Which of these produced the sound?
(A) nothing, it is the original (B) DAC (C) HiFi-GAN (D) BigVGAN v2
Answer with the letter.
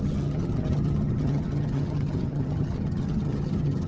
C